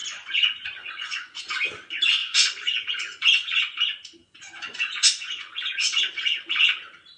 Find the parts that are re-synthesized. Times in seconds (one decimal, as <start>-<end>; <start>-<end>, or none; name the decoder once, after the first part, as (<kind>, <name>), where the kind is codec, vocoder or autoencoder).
0.0-1.4 (vocoder, Vocos); 2.2-3.6; 4.2-6.0